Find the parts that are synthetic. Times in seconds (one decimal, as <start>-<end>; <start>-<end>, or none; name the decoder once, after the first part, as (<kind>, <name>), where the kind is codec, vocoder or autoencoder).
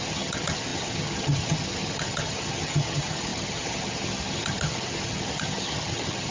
0.0-6.3 (vocoder, HiFi-GAN)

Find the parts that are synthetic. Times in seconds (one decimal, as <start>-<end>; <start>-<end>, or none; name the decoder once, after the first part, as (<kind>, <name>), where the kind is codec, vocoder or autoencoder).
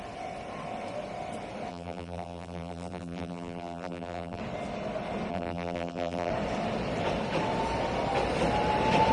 1.7-4.4 (vocoder, BigVGAN v2); 5.3-6.3